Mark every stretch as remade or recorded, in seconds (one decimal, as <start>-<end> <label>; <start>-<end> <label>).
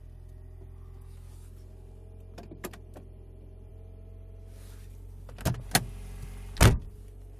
0.0-7.4 recorded